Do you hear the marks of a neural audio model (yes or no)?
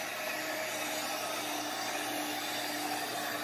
no